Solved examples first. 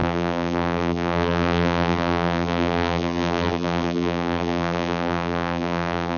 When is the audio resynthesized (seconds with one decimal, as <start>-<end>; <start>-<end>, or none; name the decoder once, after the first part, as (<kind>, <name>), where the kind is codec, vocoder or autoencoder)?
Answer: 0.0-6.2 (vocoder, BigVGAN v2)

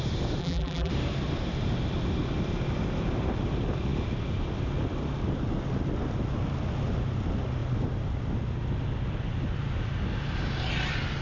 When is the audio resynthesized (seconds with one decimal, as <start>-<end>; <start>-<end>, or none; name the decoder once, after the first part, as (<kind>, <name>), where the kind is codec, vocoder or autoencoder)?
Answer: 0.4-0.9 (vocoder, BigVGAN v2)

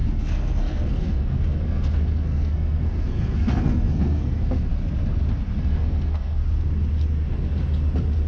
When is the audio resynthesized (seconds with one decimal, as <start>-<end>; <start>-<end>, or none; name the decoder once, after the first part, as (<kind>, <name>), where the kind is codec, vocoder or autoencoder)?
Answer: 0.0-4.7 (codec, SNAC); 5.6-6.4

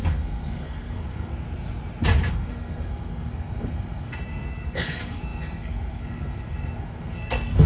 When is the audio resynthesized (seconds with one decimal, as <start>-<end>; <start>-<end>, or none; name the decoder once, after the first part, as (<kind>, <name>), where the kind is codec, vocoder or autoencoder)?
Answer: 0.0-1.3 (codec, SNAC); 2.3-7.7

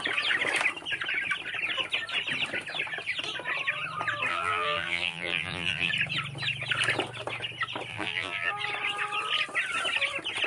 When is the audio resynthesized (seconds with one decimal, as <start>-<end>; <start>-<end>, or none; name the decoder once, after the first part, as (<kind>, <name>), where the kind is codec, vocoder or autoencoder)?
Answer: 4.3-5.9 (vocoder, BigVGAN v2); 7.9-8.5

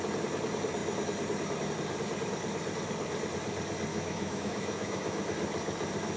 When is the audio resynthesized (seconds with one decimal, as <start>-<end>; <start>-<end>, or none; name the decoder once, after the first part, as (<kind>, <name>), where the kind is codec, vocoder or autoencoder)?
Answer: 3.9-5.2 (autoencoder, DAC-VAE)

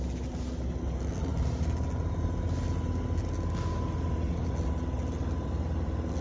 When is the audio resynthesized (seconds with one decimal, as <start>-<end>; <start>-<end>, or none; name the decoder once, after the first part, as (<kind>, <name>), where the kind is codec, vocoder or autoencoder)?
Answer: none